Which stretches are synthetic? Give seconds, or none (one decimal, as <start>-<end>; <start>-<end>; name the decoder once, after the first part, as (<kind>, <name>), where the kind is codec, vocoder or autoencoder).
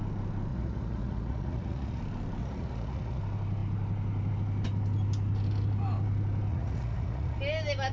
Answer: 0.5-2.0 (vocoder, Vocos); 2.4-3.2; 6.5-7.4